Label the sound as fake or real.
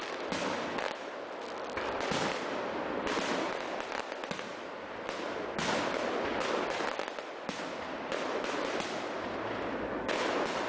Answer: real